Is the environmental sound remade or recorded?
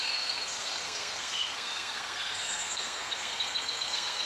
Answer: remade